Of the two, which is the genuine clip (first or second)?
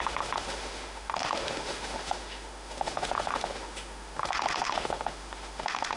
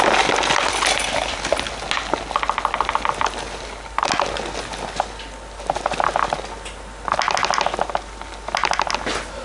second